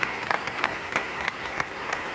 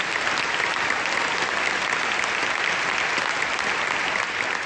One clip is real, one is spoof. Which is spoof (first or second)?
first